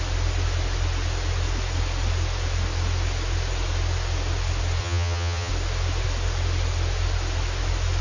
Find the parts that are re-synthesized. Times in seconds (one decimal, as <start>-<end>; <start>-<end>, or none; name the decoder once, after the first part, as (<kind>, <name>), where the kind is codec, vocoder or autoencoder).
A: 4.8-5.5 (vocoder, HiFi-GAN)